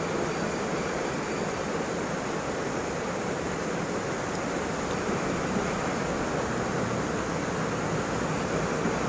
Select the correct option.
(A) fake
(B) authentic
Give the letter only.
B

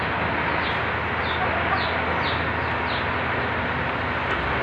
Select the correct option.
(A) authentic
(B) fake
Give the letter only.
A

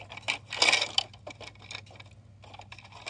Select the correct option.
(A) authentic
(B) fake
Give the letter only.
A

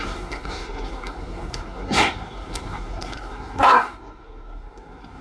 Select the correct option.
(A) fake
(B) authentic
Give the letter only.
A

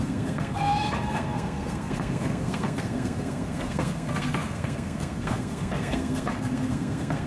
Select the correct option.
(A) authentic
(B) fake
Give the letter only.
B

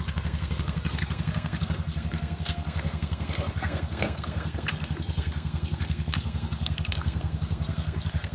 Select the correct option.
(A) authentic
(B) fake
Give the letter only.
B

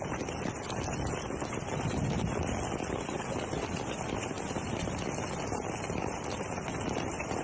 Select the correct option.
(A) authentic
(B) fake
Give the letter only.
A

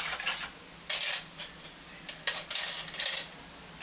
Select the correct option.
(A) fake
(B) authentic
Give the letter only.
B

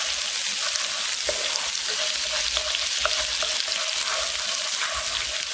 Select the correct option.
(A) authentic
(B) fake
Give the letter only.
A